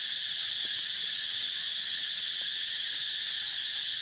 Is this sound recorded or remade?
remade